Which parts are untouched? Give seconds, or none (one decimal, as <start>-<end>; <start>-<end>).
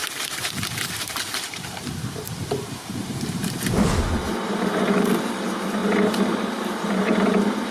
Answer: none